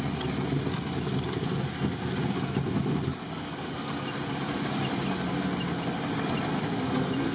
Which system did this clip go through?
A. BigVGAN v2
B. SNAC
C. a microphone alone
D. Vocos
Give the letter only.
C